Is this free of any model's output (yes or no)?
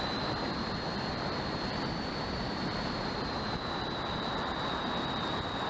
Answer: no